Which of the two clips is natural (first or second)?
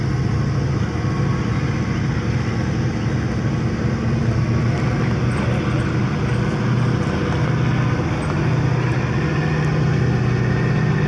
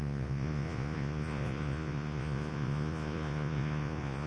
first